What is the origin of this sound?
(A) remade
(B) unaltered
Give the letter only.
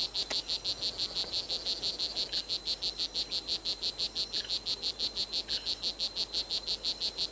B